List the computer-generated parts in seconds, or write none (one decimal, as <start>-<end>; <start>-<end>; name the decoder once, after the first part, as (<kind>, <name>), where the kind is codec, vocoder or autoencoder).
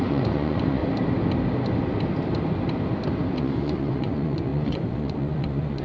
0.0-0.8 (vocoder, Vocos); 3.4-5.8